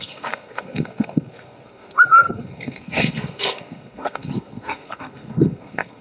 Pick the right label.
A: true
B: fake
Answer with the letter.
B